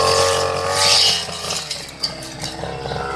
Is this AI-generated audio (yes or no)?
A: no